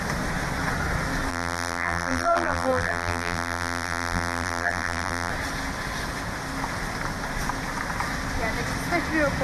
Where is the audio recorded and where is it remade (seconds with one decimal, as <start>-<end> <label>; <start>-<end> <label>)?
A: 0.0-1.3 recorded; 1.3-5.3 remade; 5.3-9.4 recorded